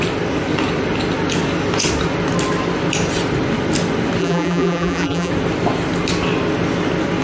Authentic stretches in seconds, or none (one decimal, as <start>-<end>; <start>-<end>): 0.0-4.2; 5.3-7.2